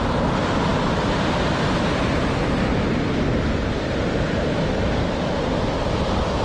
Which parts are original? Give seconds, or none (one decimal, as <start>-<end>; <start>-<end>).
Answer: 0.0-6.4